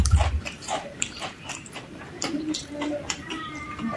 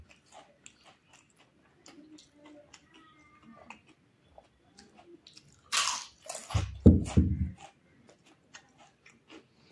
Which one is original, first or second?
second